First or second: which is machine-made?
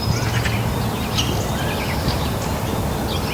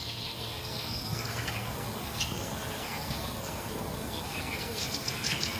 second